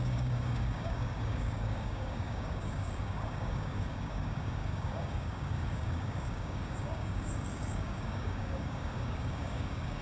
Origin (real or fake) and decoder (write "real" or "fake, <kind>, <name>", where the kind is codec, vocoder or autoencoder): fake, codec, DAC